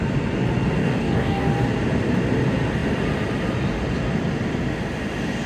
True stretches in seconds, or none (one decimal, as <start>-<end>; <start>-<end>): 0.0-0.8; 1.5-5.5